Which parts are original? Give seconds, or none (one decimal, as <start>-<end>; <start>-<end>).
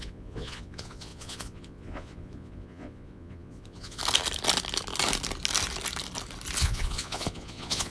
4.0-6.6